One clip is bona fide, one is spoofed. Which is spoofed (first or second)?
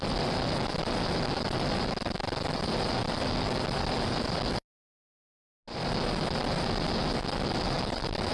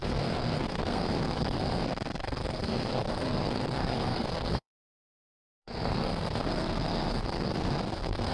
second